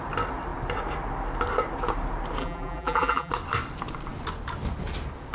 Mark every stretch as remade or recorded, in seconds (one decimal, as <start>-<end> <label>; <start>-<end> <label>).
0.0-2.4 recorded; 2.4-3.3 remade; 3.3-5.3 recorded